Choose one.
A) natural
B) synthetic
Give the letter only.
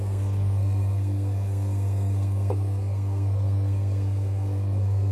B